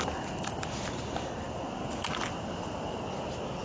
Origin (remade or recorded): remade